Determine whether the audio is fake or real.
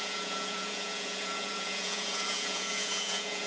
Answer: fake